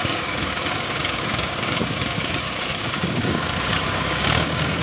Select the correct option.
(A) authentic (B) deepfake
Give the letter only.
B